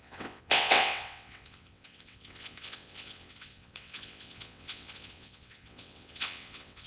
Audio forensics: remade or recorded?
remade